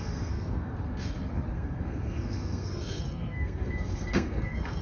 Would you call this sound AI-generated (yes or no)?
yes